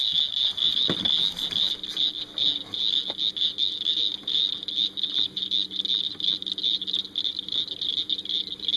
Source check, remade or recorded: recorded